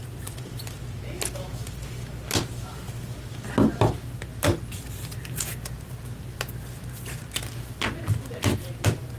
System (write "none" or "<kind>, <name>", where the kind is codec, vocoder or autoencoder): none